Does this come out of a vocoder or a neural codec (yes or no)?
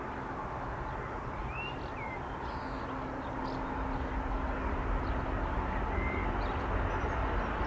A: no